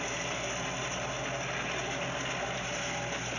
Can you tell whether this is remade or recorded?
recorded